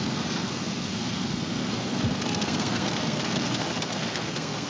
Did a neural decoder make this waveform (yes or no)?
yes